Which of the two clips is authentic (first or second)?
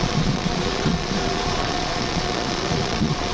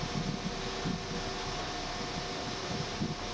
second